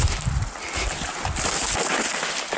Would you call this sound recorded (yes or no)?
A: yes